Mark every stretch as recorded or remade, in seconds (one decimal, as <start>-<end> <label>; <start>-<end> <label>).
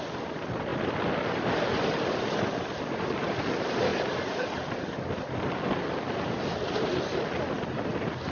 0.0-0.7 recorded; 0.7-2.5 remade; 2.5-3.9 recorded; 3.9-4.7 remade; 4.7-8.3 recorded